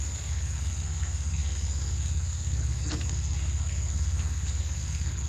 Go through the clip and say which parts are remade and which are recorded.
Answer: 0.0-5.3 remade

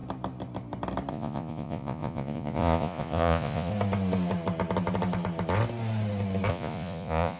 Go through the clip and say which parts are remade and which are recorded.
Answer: 0.0-1.1 recorded; 1.1-3.7 remade; 3.7-6.5 recorded; 6.5-7.4 remade